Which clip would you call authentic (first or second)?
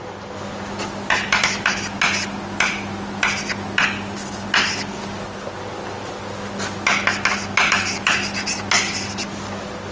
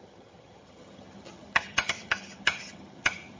first